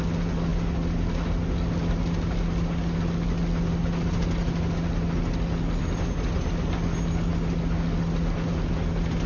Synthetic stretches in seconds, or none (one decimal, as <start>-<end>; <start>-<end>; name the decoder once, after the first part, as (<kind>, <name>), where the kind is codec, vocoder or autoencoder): none